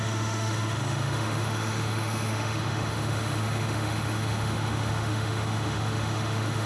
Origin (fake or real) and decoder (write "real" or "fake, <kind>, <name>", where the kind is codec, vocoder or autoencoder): fake, autoencoder, DAC-VAE